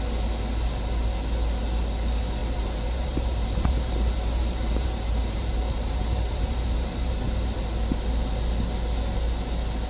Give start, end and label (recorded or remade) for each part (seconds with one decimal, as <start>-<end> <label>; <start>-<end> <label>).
0.0-2.4 recorded; 2.4-7.6 remade; 7.6-9.9 recorded